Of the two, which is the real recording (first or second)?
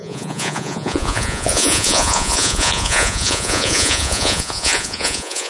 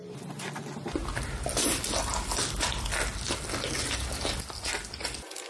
second